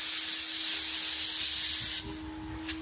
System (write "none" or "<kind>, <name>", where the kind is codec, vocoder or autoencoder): none